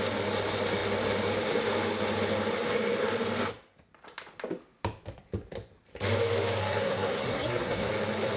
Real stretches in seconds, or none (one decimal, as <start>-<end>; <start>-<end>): 0.0-6.6; 7.9-8.4